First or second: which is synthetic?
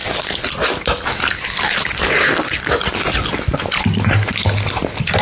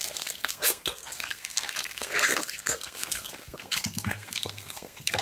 second